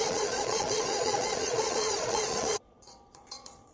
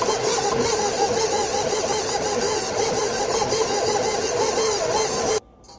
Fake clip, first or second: first